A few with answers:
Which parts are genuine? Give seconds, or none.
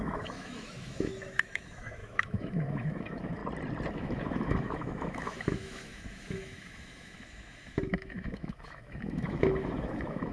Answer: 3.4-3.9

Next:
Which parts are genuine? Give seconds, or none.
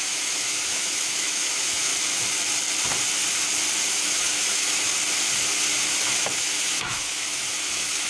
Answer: 1.9-3.9; 4.9-6.2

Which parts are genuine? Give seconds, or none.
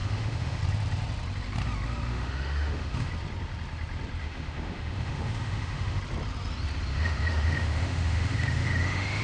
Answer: 0.6-2.1; 3.1-4.2; 6.0-6.9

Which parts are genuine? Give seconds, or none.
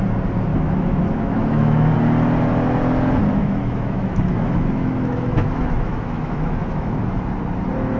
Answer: 0.0-0.5; 1.9-3.4; 7.0-8.0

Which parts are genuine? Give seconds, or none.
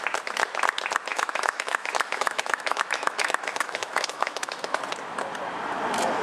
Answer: 0.0-1.1; 4.8-6.2